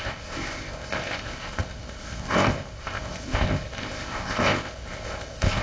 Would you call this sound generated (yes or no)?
yes